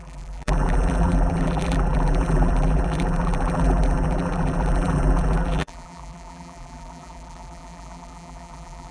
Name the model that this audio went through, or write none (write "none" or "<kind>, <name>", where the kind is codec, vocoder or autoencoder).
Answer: vocoder, BigVGAN v2